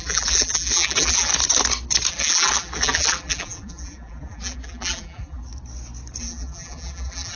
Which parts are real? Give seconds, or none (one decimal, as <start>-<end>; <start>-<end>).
1.3-2.1; 5.4-6.2